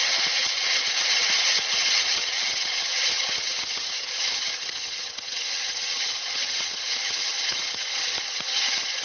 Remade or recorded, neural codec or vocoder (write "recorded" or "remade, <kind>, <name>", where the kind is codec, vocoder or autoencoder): remade, vocoder, HiFi-GAN